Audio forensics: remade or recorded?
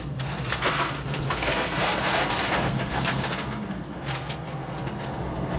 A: remade